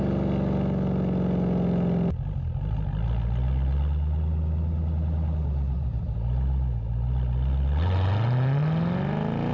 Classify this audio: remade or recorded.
recorded